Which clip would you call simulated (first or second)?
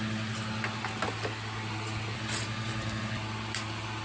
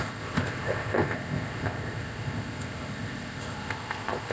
second